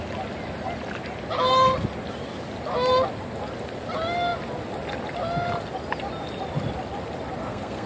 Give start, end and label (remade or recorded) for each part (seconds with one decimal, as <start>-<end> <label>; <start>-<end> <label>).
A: 0.0-7.4 recorded; 7.4-7.9 remade